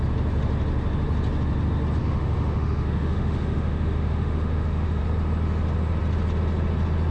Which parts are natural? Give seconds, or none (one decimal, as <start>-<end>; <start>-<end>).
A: 0.0-2.0; 5.0-7.1